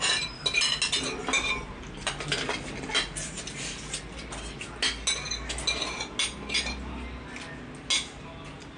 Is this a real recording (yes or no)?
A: yes